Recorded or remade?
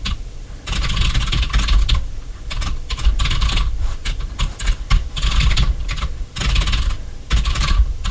recorded